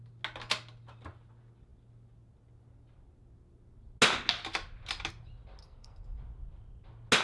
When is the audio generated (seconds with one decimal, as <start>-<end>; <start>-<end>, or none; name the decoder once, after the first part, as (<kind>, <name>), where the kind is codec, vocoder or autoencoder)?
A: 5.6-6.2 (codec, SNAC)